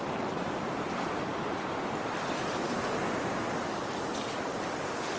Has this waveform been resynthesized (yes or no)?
no